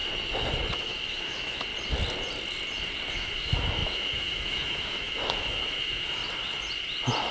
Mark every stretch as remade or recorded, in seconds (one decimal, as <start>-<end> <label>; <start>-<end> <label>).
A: 0.0-0.7 recorded; 0.7-1.7 remade; 1.7-3.1 recorded; 3.1-6.2 remade; 6.2-7.3 recorded